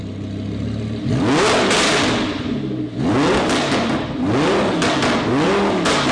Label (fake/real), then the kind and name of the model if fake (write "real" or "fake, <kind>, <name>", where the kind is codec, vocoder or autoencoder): real